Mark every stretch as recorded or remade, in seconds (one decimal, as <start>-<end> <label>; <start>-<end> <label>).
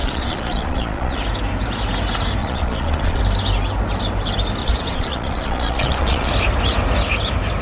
0.0-1.2 remade; 1.2-2.4 recorded; 2.4-3.2 remade; 3.2-4.6 recorded; 4.6-6.3 remade; 6.3-7.6 recorded